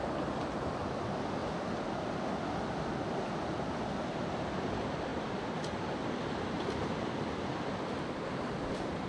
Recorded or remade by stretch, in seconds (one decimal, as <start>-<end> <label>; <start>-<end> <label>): 0.0-9.1 recorded